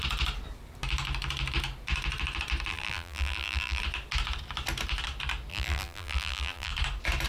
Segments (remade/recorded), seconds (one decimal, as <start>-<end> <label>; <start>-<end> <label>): 0.0-2.7 recorded; 2.7-3.8 remade; 3.8-5.5 recorded; 5.5-6.7 remade; 6.7-7.3 recorded